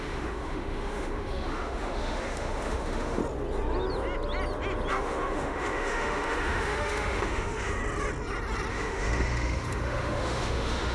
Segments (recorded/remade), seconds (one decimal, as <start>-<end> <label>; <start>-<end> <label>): 0.0-3.2 remade; 3.2-4.9 recorded; 4.9-7.8 remade; 7.8-8.7 recorded; 8.7-10.9 remade